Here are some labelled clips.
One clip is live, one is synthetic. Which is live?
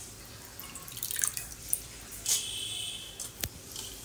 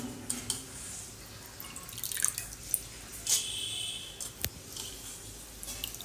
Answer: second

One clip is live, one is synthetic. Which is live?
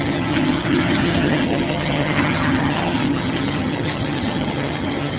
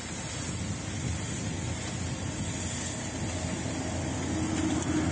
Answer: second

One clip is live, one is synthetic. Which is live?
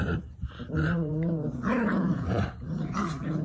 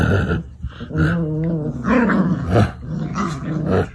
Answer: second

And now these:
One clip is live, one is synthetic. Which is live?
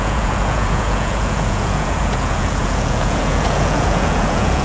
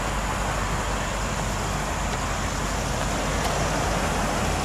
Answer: second